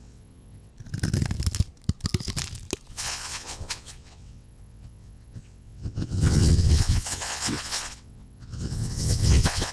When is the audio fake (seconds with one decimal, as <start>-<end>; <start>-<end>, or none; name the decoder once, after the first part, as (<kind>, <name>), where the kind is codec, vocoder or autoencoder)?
0.0-0.7 (vocoder, WaveNeXt); 2.9-9.7